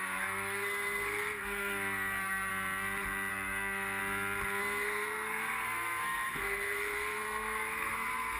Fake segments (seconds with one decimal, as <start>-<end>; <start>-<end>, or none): 0.0-2.5; 3.3-4.0; 4.6-8.4